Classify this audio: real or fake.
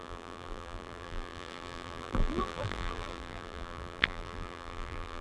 fake